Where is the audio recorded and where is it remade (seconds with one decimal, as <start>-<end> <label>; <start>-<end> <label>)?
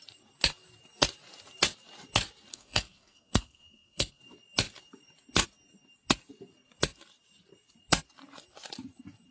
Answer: 0.0-2.5 recorded; 2.5-4.2 remade; 4.2-9.3 recorded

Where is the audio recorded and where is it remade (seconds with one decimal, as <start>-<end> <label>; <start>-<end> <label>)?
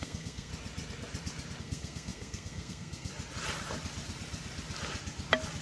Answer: 0.0-0.5 remade; 0.5-1.6 recorded; 1.6-3.1 remade; 3.1-5.6 recorded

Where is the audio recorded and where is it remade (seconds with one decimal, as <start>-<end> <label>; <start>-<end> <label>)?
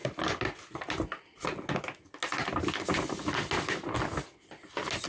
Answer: 0.0-5.1 recorded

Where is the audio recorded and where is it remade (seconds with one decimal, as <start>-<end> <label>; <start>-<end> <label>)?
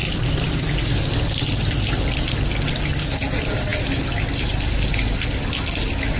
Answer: 0.0-6.2 recorded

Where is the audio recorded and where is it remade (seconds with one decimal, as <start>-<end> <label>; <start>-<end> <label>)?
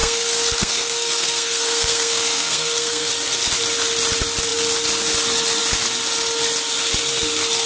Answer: 0.0-3.1 remade; 3.1-7.7 recorded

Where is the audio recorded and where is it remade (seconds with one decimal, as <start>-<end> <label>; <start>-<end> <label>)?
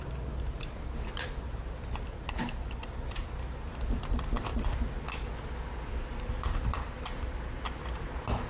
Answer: 0.0-8.5 recorded